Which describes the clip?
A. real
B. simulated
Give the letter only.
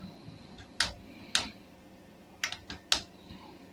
A